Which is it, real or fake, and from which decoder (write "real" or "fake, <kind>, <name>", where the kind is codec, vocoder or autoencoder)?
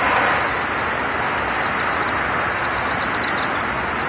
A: real